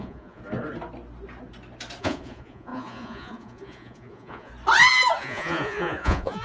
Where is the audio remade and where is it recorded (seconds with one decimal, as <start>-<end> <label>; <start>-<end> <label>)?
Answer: 0.0-0.4 remade; 0.4-2.0 recorded; 2.0-4.5 remade; 4.5-5.2 recorded; 5.2-6.4 remade